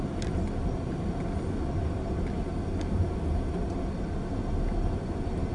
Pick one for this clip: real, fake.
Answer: real